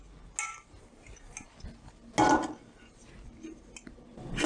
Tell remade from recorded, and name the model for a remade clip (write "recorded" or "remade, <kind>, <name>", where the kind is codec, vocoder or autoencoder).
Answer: recorded